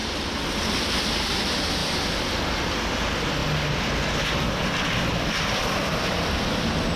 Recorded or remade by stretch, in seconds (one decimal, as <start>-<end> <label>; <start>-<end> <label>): 0.0-0.6 remade; 0.6-1.8 recorded; 1.8-2.4 remade; 2.4-3.4 recorded; 3.4-7.0 remade